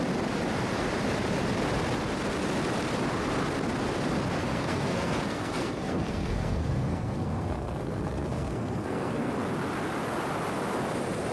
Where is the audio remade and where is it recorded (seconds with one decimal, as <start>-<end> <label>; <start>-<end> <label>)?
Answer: 0.0-4.4 recorded; 4.4-9.3 remade; 9.3-11.3 recorded